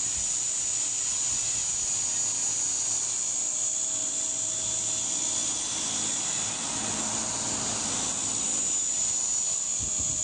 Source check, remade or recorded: recorded